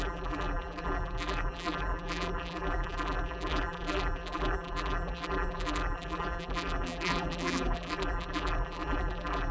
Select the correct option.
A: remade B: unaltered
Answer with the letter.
A